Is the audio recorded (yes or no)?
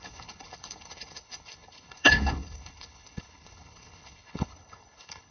no